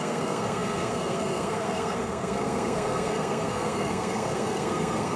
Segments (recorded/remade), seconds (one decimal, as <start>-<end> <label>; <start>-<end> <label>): 0.0-5.2 remade